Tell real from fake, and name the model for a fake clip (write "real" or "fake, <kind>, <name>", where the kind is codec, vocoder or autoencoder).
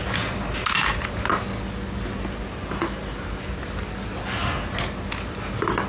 real